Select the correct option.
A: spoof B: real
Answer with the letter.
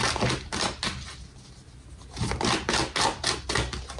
B